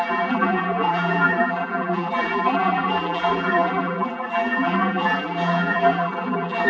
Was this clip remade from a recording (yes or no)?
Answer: yes